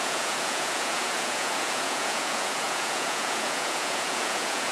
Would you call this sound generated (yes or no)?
yes